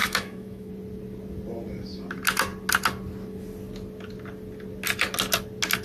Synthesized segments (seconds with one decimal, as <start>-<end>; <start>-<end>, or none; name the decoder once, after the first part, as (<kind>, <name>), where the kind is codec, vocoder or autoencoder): 0.0-0.7 (autoencoder, DAC-VAE)